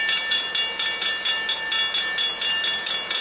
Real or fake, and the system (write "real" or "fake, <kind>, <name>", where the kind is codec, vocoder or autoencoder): real